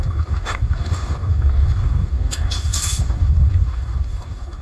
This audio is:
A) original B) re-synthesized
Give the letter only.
B